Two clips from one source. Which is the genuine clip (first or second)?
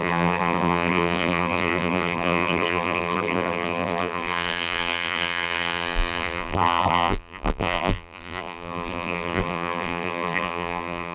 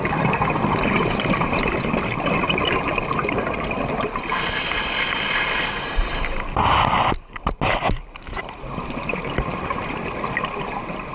second